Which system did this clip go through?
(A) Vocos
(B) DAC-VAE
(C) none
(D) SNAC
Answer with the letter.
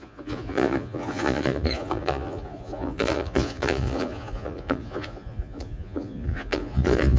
A